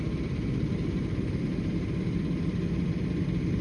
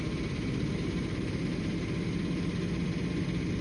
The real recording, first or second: second